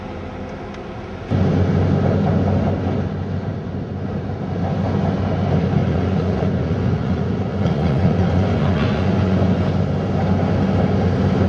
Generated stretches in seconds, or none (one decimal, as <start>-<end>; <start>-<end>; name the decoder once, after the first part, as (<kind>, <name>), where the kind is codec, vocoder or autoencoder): 5.8-9.6 (vocoder, Vocos)